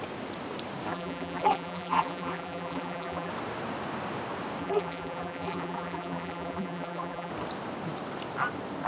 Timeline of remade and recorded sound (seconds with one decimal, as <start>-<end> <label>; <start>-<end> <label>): 0.0-0.9 recorded; 0.9-3.3 remade; 3.3-4.6 recorded; 4.6-7.3 remade; 7.3-8.9 recorded